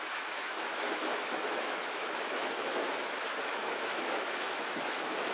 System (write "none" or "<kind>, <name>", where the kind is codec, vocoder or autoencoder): autoencoder, DAC-VAE